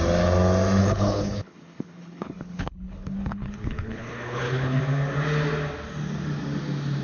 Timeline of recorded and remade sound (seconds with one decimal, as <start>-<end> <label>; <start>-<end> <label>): 0.0-0.8 recorded; 0.8-4.8 remade; 4.8-7.0 recorded